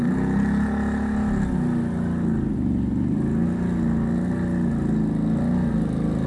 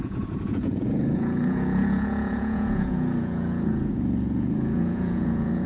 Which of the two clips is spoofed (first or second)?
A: second